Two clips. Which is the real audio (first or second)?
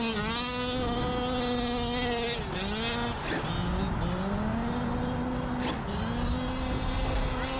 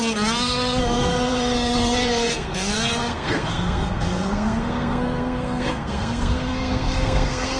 first